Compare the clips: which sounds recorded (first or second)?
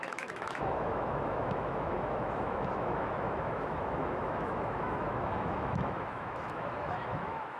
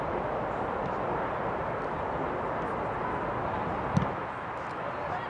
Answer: second